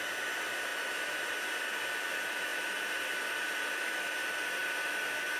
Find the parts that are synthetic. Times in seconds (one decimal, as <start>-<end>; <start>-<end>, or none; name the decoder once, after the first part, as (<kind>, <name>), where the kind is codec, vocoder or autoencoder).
none